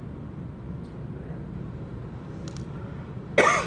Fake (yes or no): no